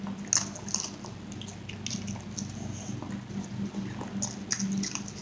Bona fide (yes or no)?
yes